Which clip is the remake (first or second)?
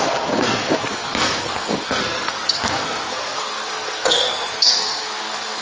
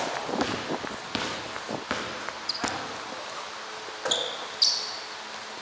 first